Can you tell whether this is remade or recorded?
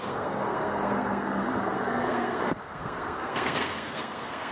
remade